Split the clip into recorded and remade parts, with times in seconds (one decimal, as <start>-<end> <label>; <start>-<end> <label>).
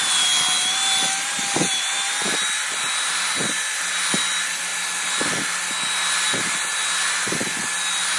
0.0-8.2 recorded